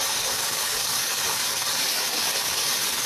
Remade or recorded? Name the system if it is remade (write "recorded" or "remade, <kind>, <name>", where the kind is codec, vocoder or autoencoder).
remade, codec, DAC